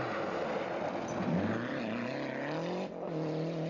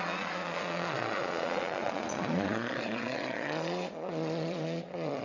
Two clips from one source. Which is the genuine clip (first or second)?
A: first